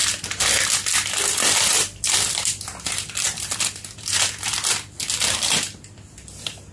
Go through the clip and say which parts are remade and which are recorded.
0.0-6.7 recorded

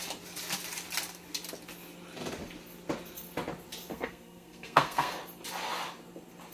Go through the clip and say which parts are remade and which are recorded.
0.0-3.9 recorded; 3.9-5.2 remade; 5.2-6.5 recorded